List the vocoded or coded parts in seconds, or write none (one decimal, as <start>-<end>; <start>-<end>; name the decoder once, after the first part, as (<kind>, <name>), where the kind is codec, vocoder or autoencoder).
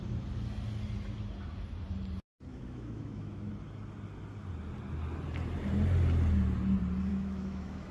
2.5-3.5 (autoencoder, DAC-VAE); 7.1-7.9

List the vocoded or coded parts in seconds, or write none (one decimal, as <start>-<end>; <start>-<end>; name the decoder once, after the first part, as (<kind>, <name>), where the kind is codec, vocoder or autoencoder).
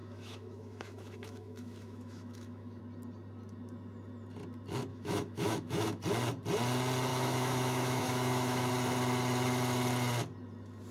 0.0-2.8 (autoencoder, DAC-VAE); 4.9-6.0; 7.1-8.7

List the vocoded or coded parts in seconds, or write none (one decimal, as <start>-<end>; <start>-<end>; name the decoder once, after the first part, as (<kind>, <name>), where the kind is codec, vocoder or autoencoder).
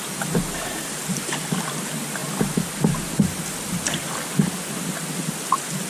none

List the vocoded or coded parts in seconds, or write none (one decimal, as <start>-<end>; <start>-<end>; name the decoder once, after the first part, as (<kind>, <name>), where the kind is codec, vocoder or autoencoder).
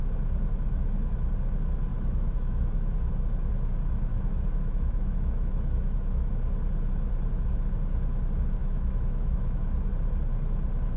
1.9-3.1 (autoencoder, DAC-VAE); 4.1-6.3; 8.6-9.9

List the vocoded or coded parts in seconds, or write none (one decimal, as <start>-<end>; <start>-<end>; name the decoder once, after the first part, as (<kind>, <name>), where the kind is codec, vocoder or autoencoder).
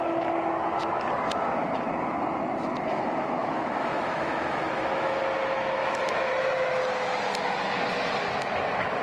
3.4-5.2 (autoencoder, DAC-VAE); 5.8-6.3